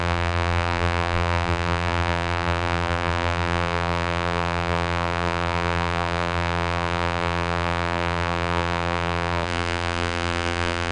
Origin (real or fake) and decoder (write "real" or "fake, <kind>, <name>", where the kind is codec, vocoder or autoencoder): fake, vocoder, BigVGAN v2